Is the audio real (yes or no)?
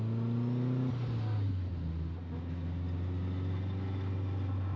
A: yes